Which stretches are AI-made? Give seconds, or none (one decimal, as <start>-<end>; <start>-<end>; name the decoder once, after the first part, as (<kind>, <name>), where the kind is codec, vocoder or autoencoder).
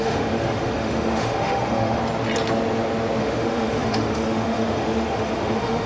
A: 0.0-2.0 (autoencoder, DAC-VAE); 3.2-5.9